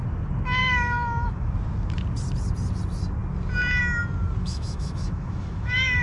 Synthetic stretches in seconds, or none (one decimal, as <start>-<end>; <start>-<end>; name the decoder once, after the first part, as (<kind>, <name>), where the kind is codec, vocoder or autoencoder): 0.6-1.5 (autoencoder, DAC-VAE); 4.4-6.0